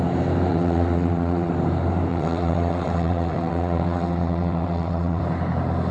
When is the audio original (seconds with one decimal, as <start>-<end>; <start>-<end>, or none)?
0.0-0.5; 1.5-2.1; 5.2-5.9